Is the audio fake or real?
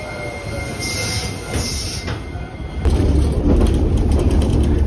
real